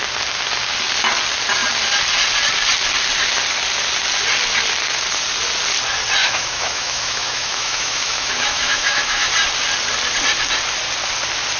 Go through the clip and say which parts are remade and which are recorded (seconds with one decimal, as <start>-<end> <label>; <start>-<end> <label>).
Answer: 0.0-6.2 recorded; 6.2-9.3 remade; 9.3-11.6 recorded